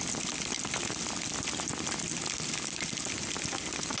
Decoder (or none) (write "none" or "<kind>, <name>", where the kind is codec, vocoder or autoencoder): none